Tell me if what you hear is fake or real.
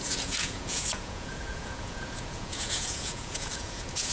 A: fake